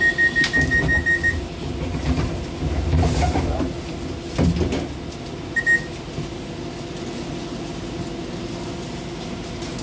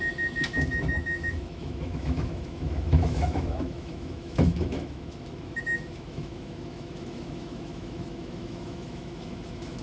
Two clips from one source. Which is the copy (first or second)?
second